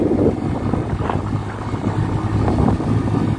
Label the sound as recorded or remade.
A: recorded